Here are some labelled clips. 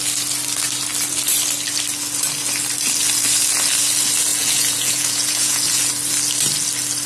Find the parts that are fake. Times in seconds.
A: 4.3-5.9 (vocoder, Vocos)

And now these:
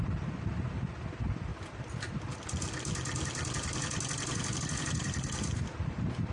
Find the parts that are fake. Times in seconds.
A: none

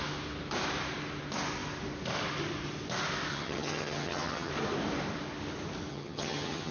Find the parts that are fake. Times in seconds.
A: 3.3-4.5 (vocoder, HiFi-GAN); 5.9-6.7

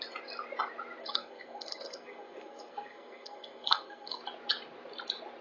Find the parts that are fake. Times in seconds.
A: 1.0-4.2 (codec, SNAC)

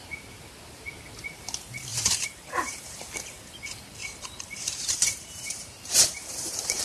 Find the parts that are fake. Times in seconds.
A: 1.9-3.0 (vocoder, BigVGAN v2); 4.0-6.8